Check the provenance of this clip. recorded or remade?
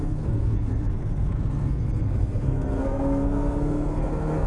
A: remade